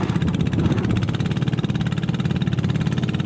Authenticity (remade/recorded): recorded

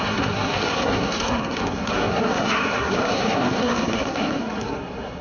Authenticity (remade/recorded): remade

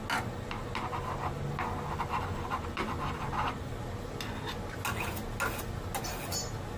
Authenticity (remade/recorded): recorded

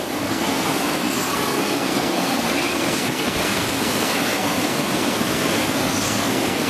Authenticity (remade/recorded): remade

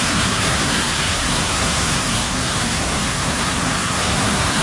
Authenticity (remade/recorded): remade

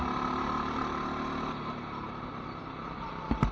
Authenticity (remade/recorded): recorded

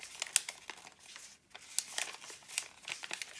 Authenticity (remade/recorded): recorded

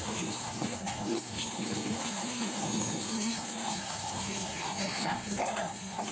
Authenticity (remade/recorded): remade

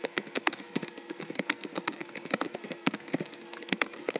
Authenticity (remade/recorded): remade